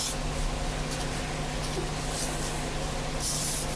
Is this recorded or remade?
recorded